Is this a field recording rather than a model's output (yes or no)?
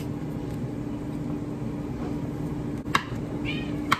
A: yes